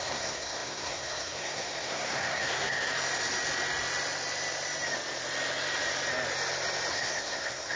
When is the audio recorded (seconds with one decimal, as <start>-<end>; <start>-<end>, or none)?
2.9-6.9